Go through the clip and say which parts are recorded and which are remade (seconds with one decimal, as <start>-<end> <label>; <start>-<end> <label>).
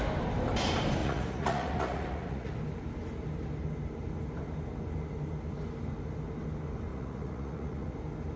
0.0-1.0 recorded; 1.0-2.5 remade; 2.5-6.9 recorded; 6.9-7.9 remade; 7.9-8.4 recorded